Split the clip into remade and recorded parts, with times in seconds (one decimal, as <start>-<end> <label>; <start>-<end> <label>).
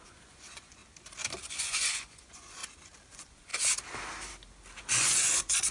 0.0-0.8 remade; 0.8-1.4 recorded; 1.4-2.6 remade; 2.6-3.1 recorded; 3.1-3.5 remade; 3.5-4.8 recorded; 4.8-5.7 remade